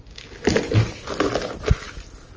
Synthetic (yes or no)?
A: no